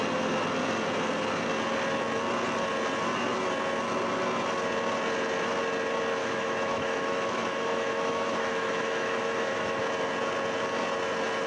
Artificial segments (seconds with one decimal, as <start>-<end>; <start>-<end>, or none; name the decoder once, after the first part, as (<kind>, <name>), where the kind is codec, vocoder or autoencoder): 6.2-9.8 (autoencoder, DAC-VAE)